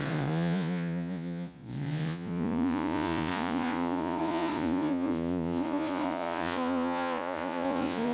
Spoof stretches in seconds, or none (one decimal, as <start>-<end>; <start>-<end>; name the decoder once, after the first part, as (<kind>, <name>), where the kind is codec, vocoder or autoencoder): 0.0-8.1 (vocoder, Vocos)

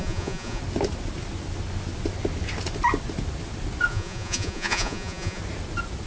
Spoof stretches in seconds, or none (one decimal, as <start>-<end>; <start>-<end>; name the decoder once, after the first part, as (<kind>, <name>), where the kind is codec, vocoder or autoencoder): 0.0-0.6 (vocoder, Vocos); 3.9-5.4

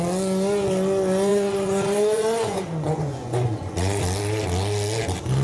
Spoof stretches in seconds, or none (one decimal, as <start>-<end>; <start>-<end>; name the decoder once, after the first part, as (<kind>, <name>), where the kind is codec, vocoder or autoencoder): 1.3-4.0 (vocoder, Vocos)

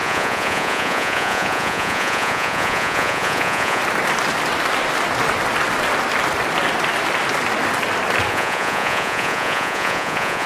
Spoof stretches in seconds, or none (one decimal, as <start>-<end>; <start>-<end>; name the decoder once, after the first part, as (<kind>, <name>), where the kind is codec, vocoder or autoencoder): 0.0-3.8 (vocoder, Vocos); 8.3-10.5

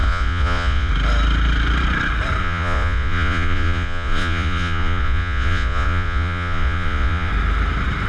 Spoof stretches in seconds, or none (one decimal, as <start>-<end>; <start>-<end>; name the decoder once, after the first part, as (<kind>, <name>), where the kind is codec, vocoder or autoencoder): 0.0-0.9 (vocoder, Vocos); 2.4-7.3